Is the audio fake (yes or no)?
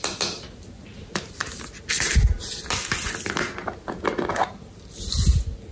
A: no